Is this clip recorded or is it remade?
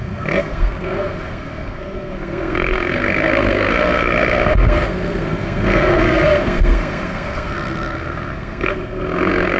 remade